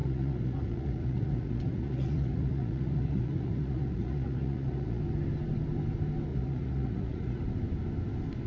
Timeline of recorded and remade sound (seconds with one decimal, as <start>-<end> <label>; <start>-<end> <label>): 0.0-5.0 remade; 5.0-6.3 recorded; 6.3-7.4 remade; 7.4-8.5 recorded